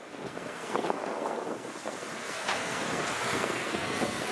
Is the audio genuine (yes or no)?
no